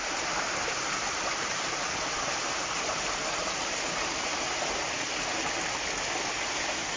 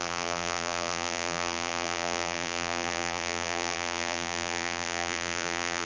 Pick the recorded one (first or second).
first